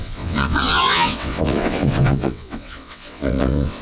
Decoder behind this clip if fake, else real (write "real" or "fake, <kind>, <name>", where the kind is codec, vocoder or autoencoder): fake, vocoder, WaveNeXt